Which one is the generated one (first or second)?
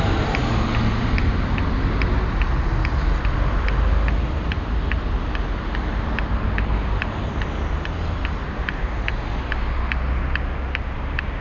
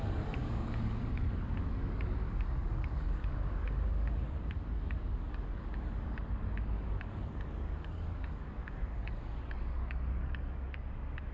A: second